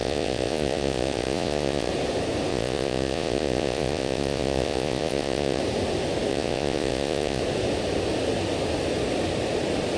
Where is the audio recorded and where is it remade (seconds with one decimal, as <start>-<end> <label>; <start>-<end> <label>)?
0.0-1.9 remade; 1.9-2.5 recorded; 2.5-5.6 remade; 5.6-6.3 recorded; 6.3-7.4 remade; 7.4-10.0 recorded